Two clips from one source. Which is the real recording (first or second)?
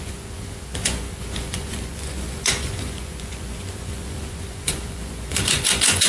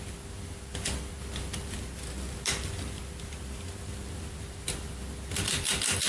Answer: second